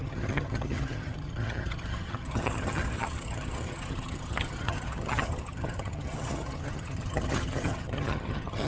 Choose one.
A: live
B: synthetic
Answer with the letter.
B